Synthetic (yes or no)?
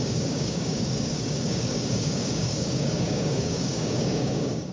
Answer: yes